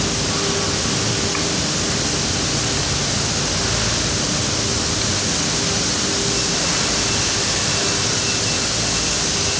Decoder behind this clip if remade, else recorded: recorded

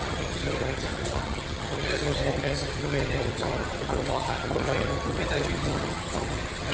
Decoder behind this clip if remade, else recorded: remade, vocoder, HiFi-GAN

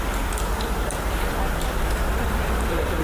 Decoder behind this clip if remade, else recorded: remade, vocoder, BigVGAN v2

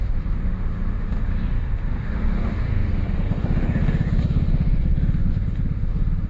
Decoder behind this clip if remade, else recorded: remade, autoencoder, DAC-VAE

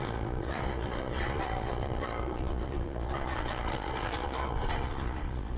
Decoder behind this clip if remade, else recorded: remade, vocoder, Vocos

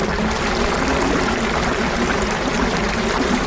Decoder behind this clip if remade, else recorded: recorded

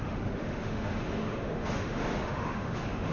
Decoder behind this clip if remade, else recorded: remade, autoencoder, DAC-VAE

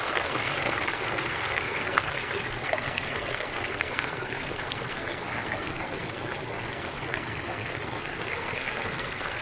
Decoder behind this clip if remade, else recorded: remade, codec, SNAC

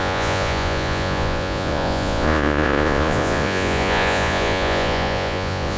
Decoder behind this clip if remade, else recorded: remade, vocoder, Vocos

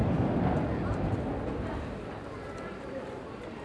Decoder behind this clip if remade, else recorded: recorded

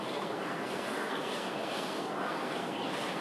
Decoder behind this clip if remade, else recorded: remade, codec, SNAC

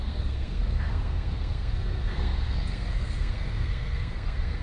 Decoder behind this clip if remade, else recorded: remade, codec, SNAC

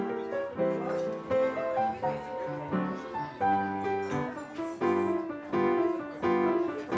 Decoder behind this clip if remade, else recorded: recorded